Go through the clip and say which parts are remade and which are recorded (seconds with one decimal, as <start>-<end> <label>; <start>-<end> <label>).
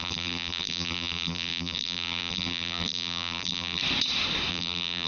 0.0-3.8 remade; 3.8-4.5 recorded; 4.5-5.1 remade